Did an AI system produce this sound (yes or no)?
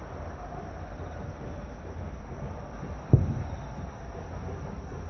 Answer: no